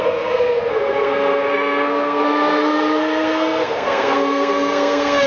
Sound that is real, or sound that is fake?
fake